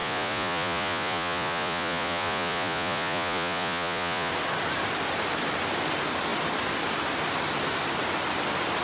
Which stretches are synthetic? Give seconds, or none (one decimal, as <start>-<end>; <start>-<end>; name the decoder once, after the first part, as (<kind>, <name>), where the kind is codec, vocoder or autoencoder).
0.0-4.3 (vocoder, Vocos)